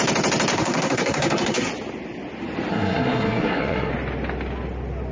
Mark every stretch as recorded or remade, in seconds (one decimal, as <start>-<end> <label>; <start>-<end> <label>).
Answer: 0.0-0.5 recorded; 0.5-1.7 remade; 1.7-2.7 recorded; 2.7-3.9 remade; 3.9-5.1 recorded